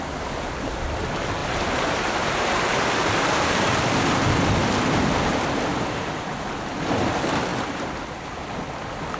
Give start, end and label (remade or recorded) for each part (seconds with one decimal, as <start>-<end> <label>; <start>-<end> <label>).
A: 0.0-1.4 recorded; 1.4-4.3 remade; 4.3-5.7 recorded; 5.7-6.3 remade; 6.3-7.5 recorded; 7.5-8.1 remade; 8.1-9.2 recorded